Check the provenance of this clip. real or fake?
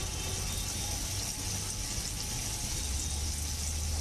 real